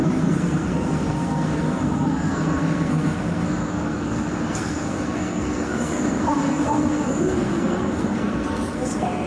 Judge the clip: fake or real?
fake